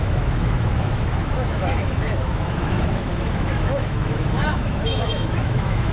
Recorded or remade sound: remade